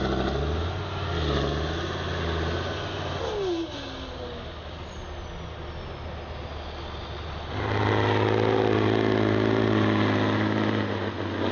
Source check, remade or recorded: recorded